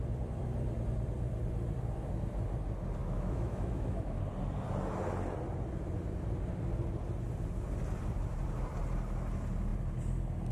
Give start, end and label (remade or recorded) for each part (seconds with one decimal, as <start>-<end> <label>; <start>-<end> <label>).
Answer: 0.0-3.0 recorded; 3.0-4.2 remade; 4.2-10.5 recorded